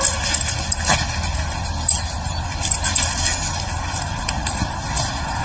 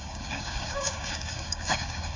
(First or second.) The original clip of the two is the first